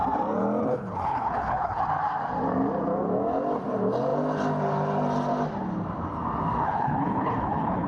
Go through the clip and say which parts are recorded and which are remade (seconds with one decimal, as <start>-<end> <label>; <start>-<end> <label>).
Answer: 0.0-0.6 recorded; 0.6-1.8 remade; 1.8-6.6 recorded; 6.6-7.9 remade